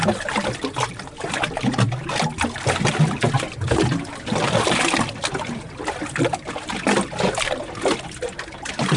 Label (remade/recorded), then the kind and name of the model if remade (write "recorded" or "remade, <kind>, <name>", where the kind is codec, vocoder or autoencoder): recorded